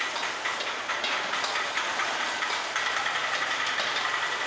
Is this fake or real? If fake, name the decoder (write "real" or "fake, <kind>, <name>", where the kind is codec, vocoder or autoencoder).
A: real